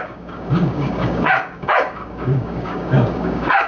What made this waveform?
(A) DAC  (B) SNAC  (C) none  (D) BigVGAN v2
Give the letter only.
A